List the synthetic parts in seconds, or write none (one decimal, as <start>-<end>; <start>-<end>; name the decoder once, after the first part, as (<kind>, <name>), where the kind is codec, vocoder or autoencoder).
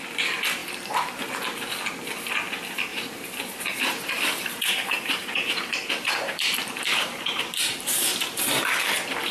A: 0.6-1.3 (vocoder, BigVGAN v2); 2.9-5.7; 6.2-8.6